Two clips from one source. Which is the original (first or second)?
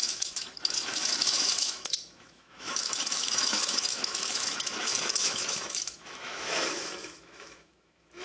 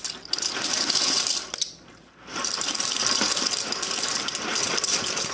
second